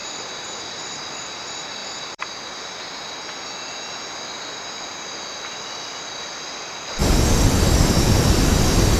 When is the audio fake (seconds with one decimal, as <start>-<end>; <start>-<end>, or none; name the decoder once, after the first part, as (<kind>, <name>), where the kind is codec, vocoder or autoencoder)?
0.0-1.2 (vocoder, BigVGAN v2); 1.8-2.4